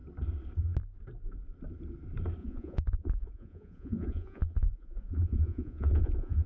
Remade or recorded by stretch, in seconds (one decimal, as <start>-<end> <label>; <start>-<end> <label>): 0.0-2.4 recorded; 2.4-6.5 remade